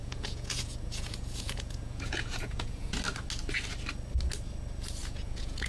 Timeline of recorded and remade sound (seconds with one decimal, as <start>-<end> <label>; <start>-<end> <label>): 0.0-3.0 remade; 3.0-5.0 recorded; 5.0-5.7 remade